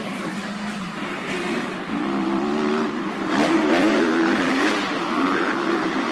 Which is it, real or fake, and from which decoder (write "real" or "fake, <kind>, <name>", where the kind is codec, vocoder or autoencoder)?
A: fake, vocoder, BigVGAN v2